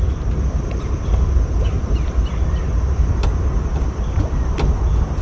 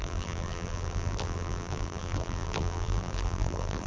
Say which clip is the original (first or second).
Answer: first